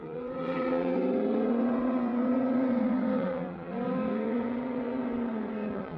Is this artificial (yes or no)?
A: yes